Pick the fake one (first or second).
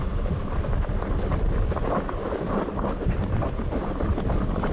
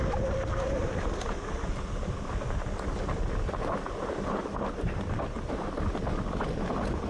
first